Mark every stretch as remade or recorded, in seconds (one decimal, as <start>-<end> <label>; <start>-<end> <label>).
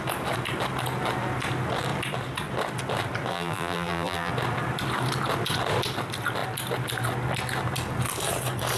0.0-3.3 recorded; 3.3-4.3 remade; 4.3-8.8 recorded